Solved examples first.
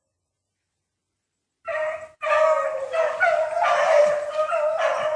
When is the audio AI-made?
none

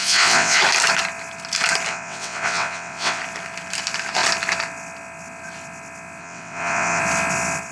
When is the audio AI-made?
0.0-0.6 (vocoder, WaveNeXt); 1.9-3.2; 6.2-7.0

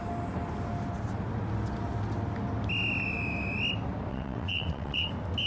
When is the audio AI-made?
4.1-5.1 (vocoder, WaveNeXt)